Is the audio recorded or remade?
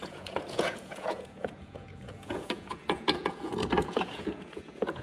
remade